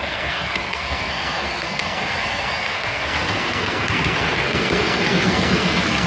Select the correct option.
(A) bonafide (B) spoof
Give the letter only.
B